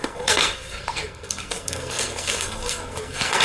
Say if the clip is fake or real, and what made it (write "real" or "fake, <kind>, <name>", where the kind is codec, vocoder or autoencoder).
fake, codec, SNAC